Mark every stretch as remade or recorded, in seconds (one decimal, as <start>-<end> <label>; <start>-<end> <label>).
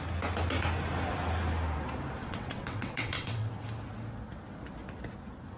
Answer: 0.0-2.2 recorded; 2.2-3.5 remade; 3.5-5.6 recorded